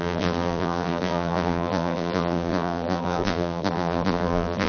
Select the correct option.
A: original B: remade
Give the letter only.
B